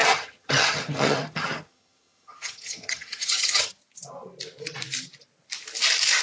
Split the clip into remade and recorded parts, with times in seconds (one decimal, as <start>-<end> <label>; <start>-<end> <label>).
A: 0.0-3.7 remade; 3.7-6.2 recorded